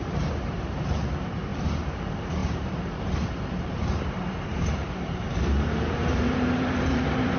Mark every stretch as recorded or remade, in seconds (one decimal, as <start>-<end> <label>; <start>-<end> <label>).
0.0-7.4 remade